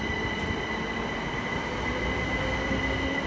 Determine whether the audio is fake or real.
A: real